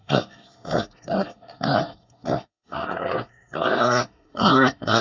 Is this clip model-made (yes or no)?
yes